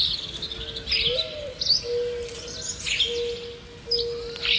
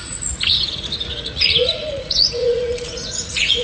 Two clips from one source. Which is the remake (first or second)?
second